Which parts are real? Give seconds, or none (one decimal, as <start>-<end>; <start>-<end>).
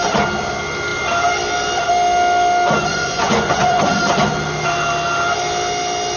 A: 0.0-2.9; 4.0-6.2